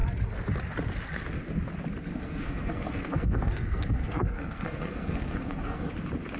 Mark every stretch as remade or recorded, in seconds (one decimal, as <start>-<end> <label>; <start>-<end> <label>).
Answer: 0.0-2.1 recorded; 2.1-5.9 remade; 5.9-6.4 recorded